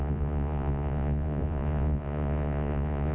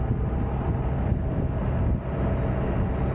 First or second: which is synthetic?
first